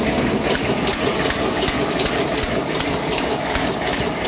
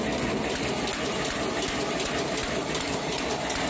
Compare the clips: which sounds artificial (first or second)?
first